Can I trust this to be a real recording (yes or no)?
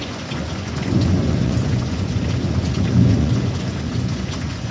no